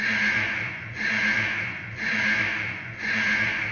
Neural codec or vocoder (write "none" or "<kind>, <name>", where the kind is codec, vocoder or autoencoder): vocoder, Vocos